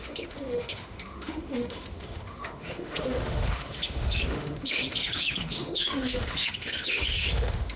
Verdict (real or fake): fake